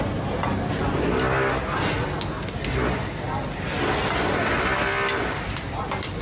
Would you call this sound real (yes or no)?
yes